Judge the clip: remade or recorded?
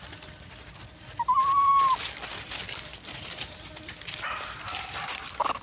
remade